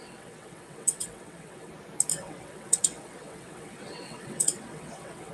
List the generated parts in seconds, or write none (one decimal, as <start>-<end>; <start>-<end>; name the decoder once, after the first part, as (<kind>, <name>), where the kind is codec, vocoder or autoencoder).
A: 0.0-1.7 (vocoder, WaveNeXt); 2.1-5.3